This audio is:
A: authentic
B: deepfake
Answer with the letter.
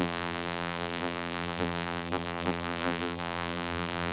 B